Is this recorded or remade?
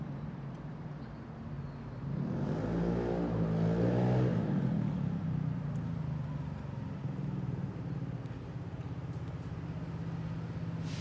recorded